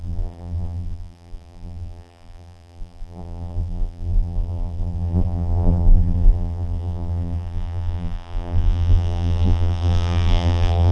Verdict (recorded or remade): remade